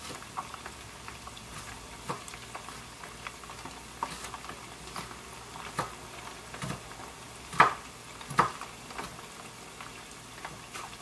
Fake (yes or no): no